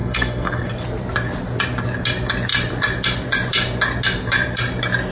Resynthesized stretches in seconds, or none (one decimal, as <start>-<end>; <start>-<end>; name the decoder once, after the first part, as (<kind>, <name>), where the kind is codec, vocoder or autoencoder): 0.0-0.7 (codec, SNAC)